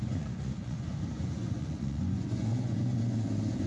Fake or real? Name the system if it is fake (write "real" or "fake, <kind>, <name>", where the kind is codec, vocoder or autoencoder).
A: fake, vocoder, Vocos